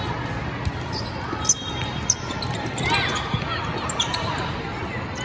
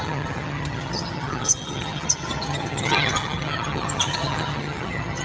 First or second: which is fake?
second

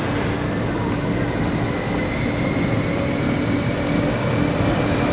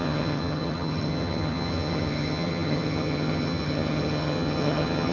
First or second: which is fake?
second